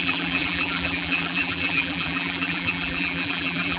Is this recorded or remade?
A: remade